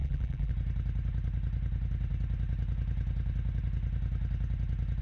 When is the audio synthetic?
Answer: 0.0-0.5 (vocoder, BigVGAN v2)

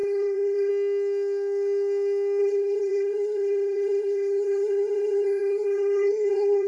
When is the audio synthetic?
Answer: 0.0-0.7 (codec, SNAC); 2.4-6.7

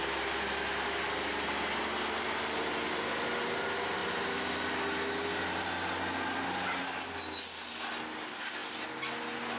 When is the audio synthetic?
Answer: none